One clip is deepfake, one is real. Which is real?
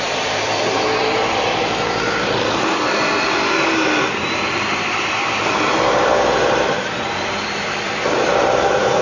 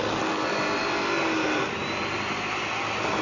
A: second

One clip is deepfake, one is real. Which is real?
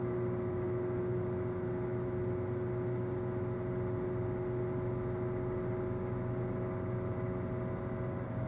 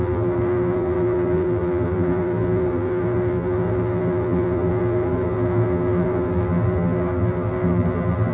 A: first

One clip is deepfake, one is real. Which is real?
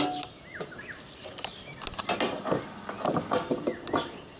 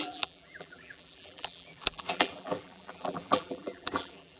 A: first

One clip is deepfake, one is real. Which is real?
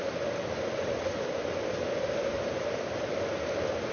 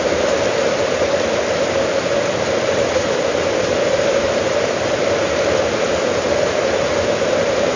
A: first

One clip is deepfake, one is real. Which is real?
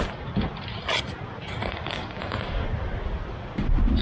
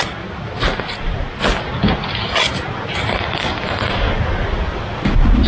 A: second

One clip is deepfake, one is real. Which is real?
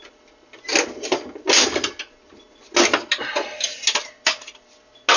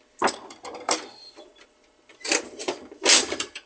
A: first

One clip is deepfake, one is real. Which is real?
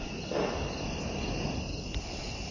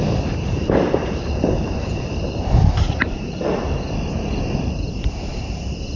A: first